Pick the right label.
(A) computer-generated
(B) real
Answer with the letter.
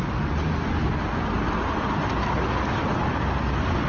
B